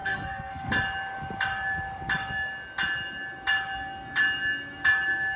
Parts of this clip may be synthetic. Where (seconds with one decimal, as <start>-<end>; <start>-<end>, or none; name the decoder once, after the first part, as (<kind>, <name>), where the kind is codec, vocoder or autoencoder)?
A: 0.0-0.7 (codec, SNAC)